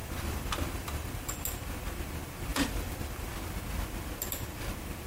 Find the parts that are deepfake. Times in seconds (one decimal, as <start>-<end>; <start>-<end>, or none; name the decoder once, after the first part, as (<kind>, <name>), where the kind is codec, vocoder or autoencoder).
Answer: 0.0-1.3 (vocoder, BigVGAN v2); 2.5-3.3